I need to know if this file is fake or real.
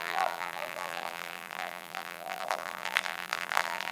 fake